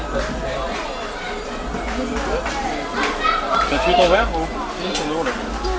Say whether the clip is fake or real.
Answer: real